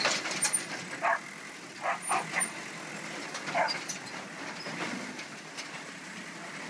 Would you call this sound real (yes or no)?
yes